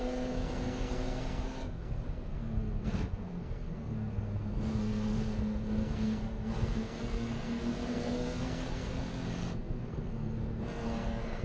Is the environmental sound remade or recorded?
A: remade